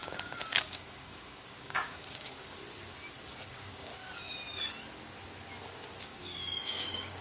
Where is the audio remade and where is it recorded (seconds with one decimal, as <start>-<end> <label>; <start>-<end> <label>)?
0.0-2.6 remade; 2.6-3.5 recorded; 3.5-3.9 remade; 3.9-6.0 recorded; 6.0-7.2 remade